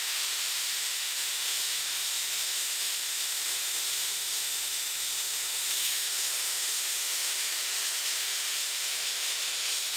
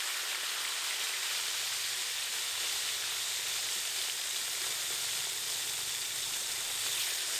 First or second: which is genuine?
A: second